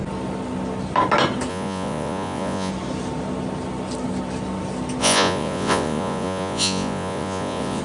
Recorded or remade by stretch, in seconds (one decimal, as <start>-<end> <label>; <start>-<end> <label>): 0.0-1.5 recorded; 1.5-2.7 remade; 2.7-5.0 recorded; 5.0-7.8 remade

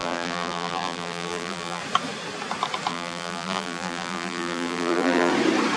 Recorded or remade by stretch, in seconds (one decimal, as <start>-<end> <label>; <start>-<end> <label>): 0.0-1.8 remade; 1.8-2.9 recorded; 2.9-5.3 remade; 5.3-5.8 recorded

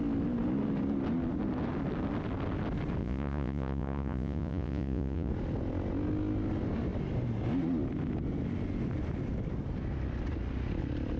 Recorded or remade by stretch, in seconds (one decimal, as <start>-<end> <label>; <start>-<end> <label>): 0.0-3.0 recorded; 3.0-5.3 remade; 5.3-11.2 recorded

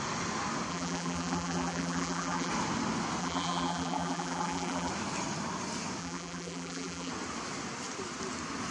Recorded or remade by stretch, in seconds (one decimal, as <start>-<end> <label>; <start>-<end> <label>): 0.0-0.7 recorded; 0.7-2.5 remade; 2.5-3.2 recorded; 3.2-4.9 remade; 4.9-6.0 recorded; 6.0-7.1 remade; 7.1-8.7 recorded

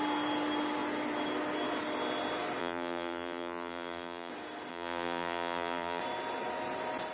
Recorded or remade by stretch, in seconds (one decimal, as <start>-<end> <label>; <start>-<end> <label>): 0.0-2.6 recorded; 2.6-4.3 remade; 4.3-4.7 recorded; 4.7-6.0 remade; 6.0-7.1 recorded

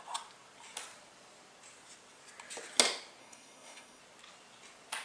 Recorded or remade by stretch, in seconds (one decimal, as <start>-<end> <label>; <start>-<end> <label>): 0.0-3.2 recorded; 3.2-4.0 remade; 4.0-5.0 recorded

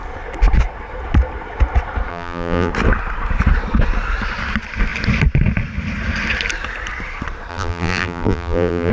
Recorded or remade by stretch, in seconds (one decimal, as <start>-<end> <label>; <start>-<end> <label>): 0.0-2.1 recorded; 2.1-2.7 remade; 2.7-7.5 recorded; 7.5-8.9 remade